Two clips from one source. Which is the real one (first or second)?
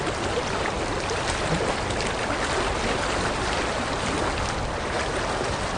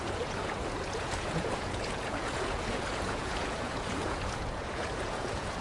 first